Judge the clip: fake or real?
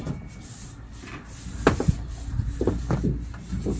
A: real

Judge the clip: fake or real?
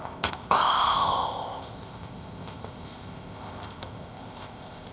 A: fake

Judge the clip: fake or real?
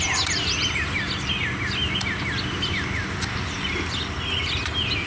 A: real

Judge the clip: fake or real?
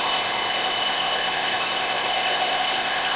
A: fake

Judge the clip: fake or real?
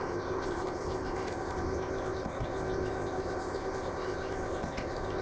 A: fake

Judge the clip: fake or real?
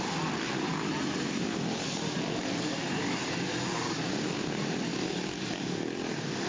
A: real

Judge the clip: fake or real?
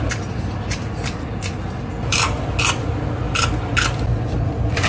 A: real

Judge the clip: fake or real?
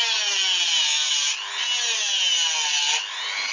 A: real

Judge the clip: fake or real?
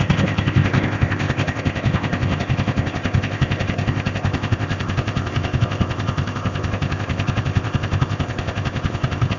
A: fake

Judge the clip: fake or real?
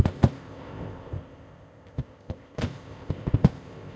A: fake